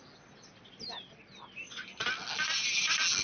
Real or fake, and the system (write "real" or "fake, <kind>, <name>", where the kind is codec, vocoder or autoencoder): real